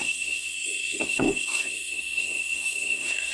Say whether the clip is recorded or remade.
remade